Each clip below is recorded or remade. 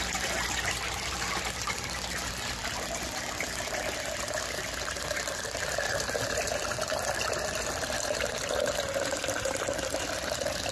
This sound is recorded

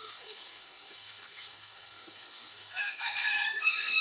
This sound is remade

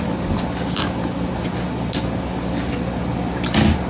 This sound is recorded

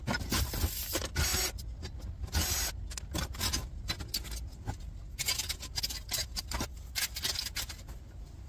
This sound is recorded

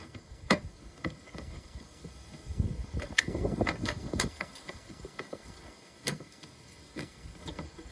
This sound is remade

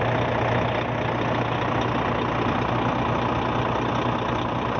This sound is recorded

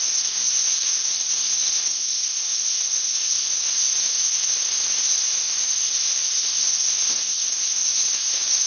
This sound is remade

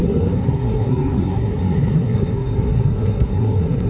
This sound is remade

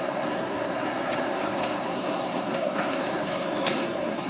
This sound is remade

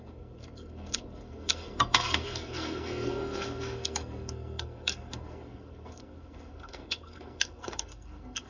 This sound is remade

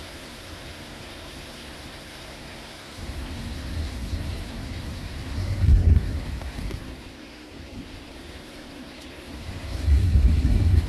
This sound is remade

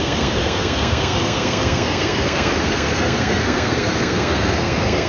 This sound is remade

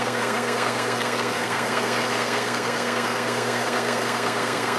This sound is remade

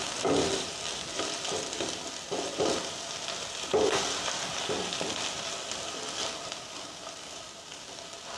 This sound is recorded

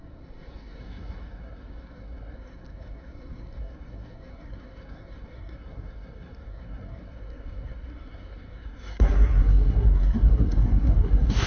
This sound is remade